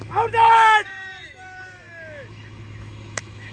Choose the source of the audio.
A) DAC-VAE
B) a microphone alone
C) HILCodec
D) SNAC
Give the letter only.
A